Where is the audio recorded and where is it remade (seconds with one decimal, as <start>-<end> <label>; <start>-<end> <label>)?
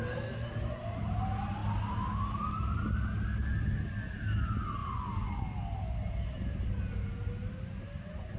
0.0-4.8 recorded; 4.8-5.4 remade; 5.4-8.4 recorded